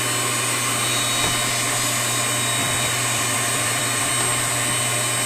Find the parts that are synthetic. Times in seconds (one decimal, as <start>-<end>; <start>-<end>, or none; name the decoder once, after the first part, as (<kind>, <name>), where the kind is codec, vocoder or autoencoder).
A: 2.6-4.1 (vocoder, BigVGAN v2)